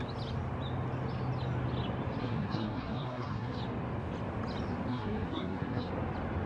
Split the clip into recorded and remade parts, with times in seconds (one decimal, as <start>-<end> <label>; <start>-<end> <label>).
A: 0.0-2.2 recorded; 2.2-3.6 remade; 3.6-4.9 recorded; 4.9-5.9 remade; 5.9-6.5 recorded